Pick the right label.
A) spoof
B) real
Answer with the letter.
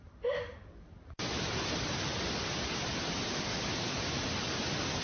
B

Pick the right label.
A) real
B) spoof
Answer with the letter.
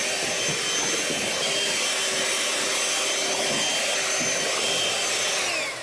A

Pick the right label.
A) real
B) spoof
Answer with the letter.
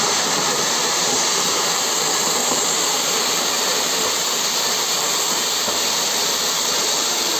B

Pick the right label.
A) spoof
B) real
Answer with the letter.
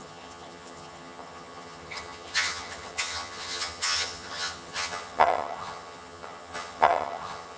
A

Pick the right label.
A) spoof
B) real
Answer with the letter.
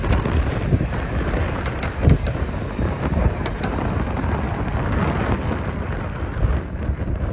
B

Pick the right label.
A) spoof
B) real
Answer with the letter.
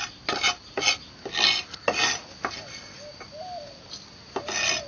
B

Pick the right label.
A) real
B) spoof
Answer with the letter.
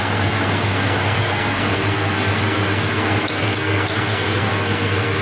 B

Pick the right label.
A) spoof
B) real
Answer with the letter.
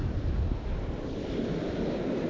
B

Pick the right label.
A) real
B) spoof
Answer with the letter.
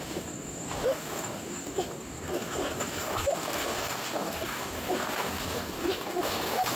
B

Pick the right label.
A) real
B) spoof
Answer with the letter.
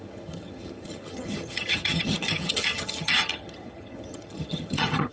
B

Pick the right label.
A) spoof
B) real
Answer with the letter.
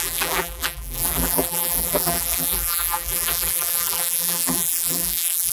A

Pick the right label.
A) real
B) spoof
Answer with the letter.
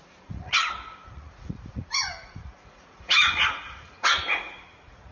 B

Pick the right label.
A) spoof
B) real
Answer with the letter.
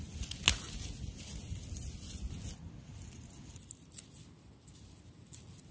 B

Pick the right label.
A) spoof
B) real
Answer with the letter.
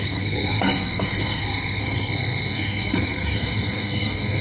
A